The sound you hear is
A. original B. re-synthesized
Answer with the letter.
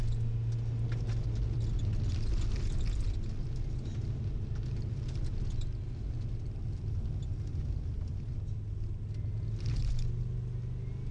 A